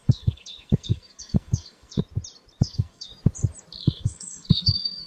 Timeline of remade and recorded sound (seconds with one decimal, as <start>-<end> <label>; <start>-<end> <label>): 0.0-2.0 remade; 2.0-2.6 recorded; 2.6-3.1 remade; 3.1-3.8 recorded; 3.8-5.1 remade

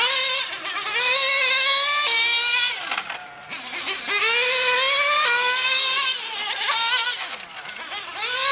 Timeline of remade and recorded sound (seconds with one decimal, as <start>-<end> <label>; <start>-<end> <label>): 0.0-8.5 recorded

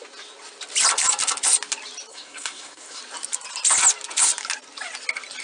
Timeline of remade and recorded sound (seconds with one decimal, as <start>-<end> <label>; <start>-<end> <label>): 0.0-2.1 recorded; 2.1-3.0 remade; 3.0-5.4 recorded

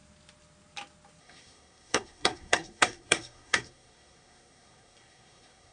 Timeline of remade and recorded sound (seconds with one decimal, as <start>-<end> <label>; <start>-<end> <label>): 0.0-1.2 recorded; 1.2-5.7 remade

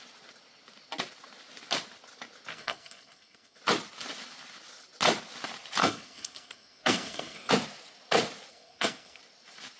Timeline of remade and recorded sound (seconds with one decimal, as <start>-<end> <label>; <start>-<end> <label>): 0.0-2.5 recorded; 2.5-3.6 remade; 3.6-5.8 recorded; 5.8-7.5 remade; 7.5-8.5 recorded; 8.5-9.2 remade; 9.2-9.8 recorded

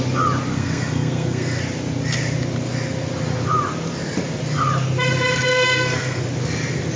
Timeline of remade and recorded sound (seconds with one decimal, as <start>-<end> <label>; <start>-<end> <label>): 0.0-0.5 recorded; 0.5-1.6 remade; 1.6-5.5 recorded; 5.5-6.2 remade; 6.2-7.0 recorded